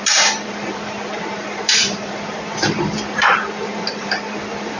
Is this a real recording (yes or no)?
no